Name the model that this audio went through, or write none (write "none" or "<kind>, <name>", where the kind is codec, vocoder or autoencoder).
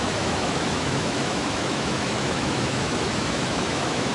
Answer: autoencoder, DAC-VAE